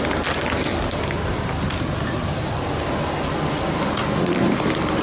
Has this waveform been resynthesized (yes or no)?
no